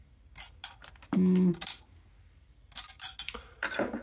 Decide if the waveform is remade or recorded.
recorded